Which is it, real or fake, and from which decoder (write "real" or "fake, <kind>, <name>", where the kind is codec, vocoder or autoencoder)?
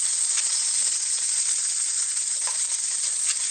fake, vocoder, WaveNeXt